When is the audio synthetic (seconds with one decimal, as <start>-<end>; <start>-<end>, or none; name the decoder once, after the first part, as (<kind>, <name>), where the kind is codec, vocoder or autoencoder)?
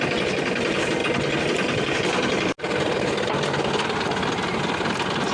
none